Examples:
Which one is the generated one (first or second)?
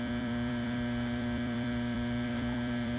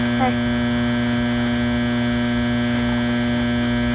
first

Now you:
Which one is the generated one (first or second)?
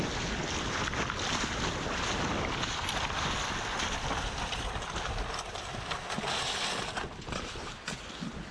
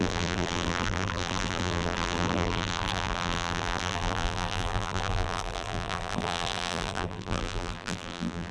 second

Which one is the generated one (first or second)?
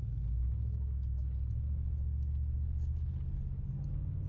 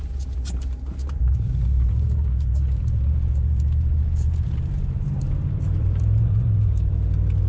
second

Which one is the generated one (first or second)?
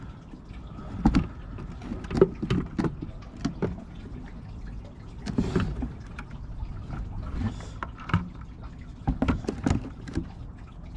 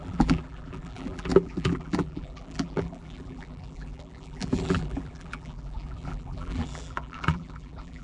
second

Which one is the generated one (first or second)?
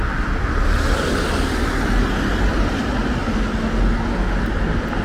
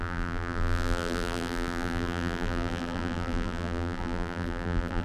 second